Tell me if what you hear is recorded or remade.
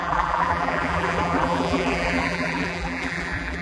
remade